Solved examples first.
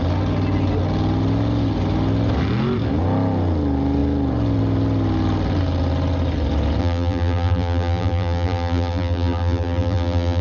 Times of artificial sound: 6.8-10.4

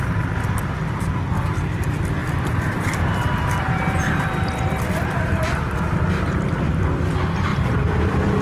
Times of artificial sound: 2.2-6.8; 7.5-8.4